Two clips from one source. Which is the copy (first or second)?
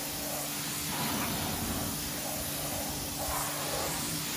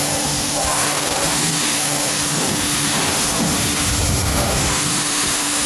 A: second